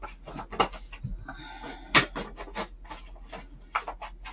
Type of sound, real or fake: real